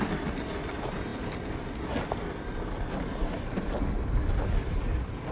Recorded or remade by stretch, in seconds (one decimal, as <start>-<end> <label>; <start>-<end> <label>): 0.0-5.3 recorded